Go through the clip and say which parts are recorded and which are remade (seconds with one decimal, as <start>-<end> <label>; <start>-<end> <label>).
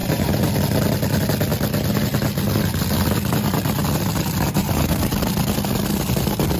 0.0-0.5 remade; 0.5-4.6 recorded; 4.6-5.1 remade; 5.1-6.6 recorded